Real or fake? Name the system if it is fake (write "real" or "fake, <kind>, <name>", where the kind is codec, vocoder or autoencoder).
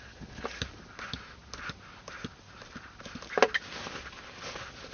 real